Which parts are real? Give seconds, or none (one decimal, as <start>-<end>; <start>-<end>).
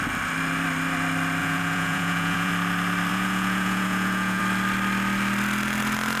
0.0-1.4; 2.5-3.1; 4.4-6.2